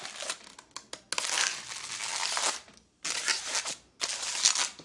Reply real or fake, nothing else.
real